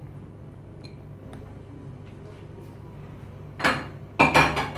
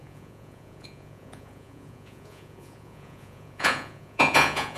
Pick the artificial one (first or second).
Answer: second